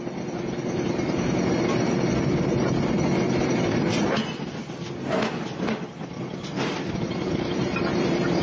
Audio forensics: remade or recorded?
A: recorded